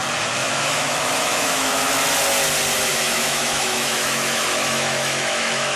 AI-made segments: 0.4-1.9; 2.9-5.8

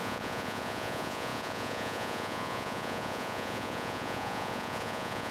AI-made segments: 0.0-5.3

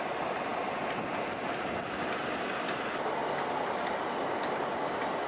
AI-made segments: none